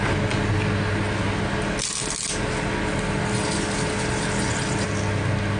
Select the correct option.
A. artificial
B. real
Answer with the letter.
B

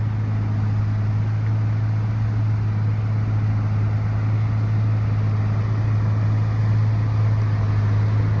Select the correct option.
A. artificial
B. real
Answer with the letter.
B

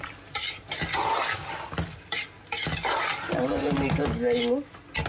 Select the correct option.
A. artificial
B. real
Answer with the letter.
B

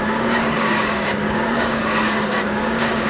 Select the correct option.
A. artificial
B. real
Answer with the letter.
A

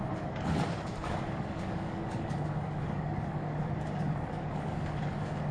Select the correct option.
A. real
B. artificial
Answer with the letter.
B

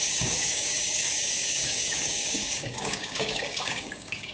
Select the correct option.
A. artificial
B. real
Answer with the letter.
A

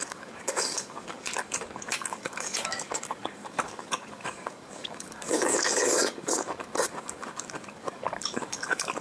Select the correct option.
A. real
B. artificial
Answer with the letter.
B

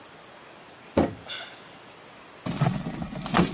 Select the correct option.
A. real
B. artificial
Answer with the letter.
A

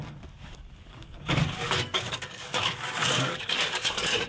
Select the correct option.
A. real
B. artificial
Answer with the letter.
B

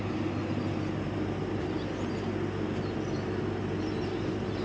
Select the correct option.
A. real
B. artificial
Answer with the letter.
A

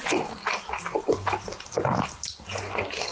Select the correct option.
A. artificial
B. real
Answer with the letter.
B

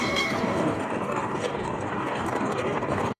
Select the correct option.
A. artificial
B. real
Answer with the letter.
A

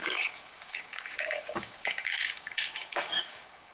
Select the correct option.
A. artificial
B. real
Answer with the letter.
A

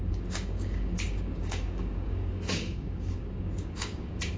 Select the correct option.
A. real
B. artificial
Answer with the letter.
B